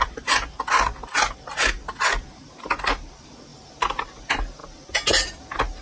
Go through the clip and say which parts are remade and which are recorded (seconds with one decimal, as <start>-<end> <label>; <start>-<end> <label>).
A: 0.0-3.5 recorded; 3.5-4.1 remade; 4.1-5.8 recorded

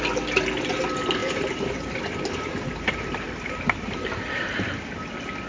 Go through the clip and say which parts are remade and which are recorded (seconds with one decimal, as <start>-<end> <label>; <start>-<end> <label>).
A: 0.0-1.2 recorded; 1.2-4.5 remade; 4.5-5.5 recorded